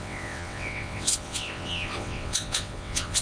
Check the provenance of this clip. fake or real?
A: fake